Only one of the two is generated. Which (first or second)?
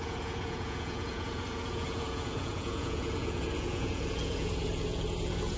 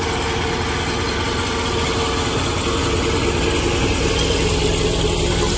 first